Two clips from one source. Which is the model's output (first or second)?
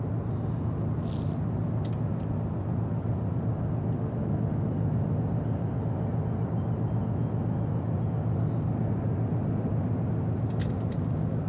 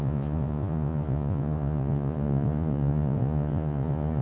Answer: second